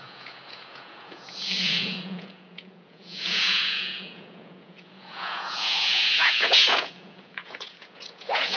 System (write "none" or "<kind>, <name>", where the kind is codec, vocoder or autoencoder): vocoder, Vocos